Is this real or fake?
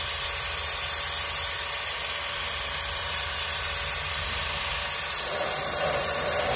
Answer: fake